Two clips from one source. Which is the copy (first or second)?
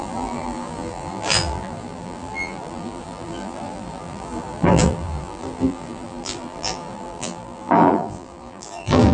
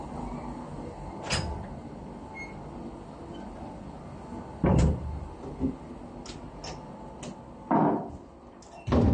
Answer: first